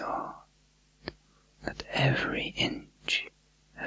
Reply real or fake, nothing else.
real